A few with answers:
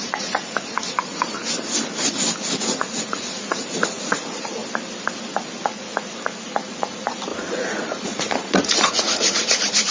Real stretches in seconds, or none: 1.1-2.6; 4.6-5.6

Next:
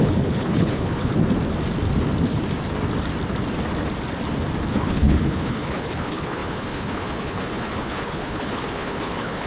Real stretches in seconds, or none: 1.1-4.7

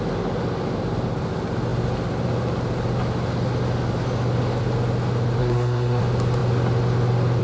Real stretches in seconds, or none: 0.0-5.4; 6.0-7.4

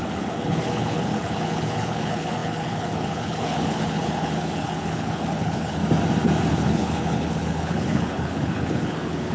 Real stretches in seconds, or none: 5.8-6.5

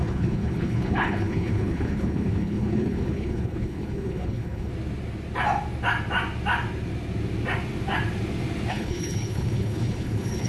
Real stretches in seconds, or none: 4.7-8.7